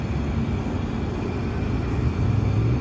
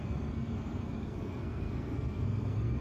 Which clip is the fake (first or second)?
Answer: second